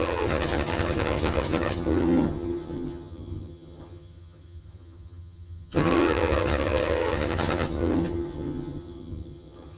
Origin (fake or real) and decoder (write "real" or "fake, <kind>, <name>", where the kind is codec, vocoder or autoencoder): fake, vocoder, HiFi-GAN